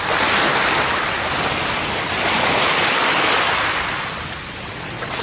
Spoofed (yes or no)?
no